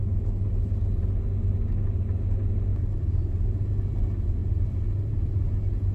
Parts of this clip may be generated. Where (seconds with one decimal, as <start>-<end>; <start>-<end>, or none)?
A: 2.7-3.6; 4.4-5.3